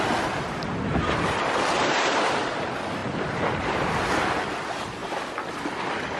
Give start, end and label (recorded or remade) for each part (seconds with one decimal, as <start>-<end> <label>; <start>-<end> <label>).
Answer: 0.0-0.9 recorded; 0.9-2.3 remade; 2.3-6.2 recorded